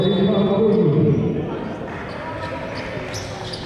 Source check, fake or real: real